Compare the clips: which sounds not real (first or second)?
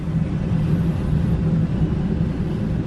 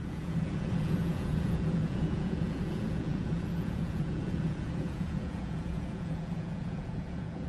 second